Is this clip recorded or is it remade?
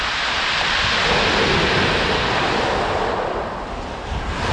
remade